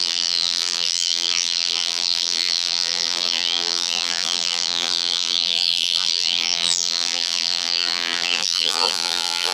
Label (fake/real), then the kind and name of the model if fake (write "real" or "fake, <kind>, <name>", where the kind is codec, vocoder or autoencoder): fake, vocoder, BigVGAN v2